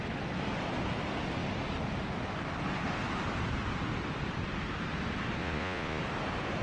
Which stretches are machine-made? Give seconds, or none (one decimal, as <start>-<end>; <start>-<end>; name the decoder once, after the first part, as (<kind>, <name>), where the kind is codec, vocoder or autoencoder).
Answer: 5.4-6.0 (vocoder, Vocos)